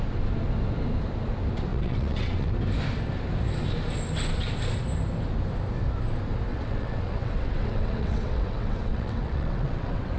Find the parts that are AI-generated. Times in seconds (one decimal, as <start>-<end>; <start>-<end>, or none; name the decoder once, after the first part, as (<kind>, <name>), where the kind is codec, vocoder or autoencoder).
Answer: 1.7-2.5 (vocoder, WaveNeXt); 6.5-10.2